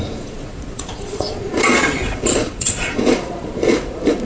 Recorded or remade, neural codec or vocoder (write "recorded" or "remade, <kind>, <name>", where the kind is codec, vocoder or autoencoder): remade, vocoder, Vocos